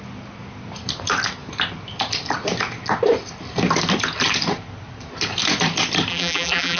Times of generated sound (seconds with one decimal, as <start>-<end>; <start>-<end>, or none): 6.1-6.8